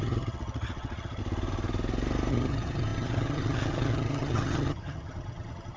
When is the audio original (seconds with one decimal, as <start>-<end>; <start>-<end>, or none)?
1.2-2.3